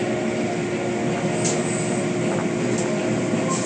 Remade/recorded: recorded